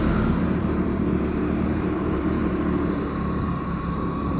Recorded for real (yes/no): no